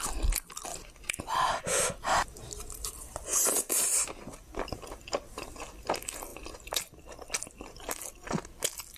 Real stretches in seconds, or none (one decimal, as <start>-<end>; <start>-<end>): 0.0-9.0